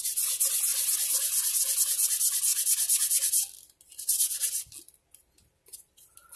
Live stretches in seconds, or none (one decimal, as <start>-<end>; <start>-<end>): 0.0-6.4